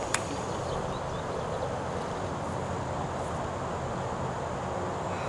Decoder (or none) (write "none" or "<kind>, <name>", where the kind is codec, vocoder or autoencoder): none